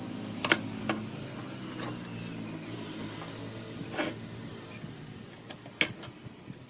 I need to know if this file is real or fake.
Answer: real